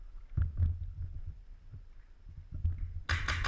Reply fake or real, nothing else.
real